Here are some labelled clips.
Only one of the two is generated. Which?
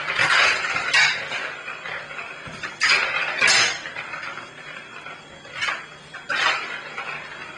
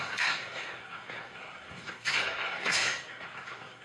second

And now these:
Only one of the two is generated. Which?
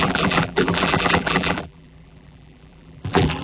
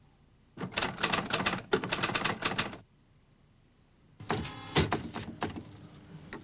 first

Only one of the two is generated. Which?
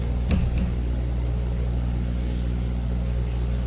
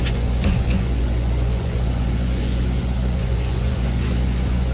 second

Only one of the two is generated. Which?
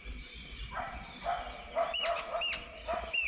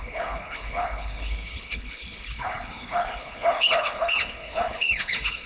second